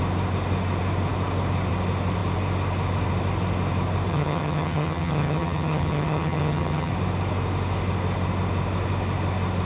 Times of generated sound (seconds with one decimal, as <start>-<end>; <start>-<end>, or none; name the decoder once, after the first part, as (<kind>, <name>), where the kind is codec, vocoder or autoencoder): 4.1-6.9 (vocoder, HiFi-GAN)